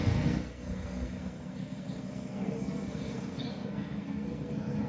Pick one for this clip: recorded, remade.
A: remade